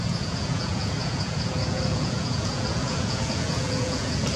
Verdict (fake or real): fake